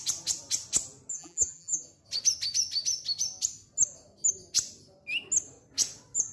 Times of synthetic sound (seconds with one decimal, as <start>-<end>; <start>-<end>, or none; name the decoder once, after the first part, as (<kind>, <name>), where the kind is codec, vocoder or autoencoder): 1.1-1.8 (vocoder, BigVGAN v2)